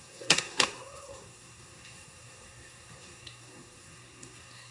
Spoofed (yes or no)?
yes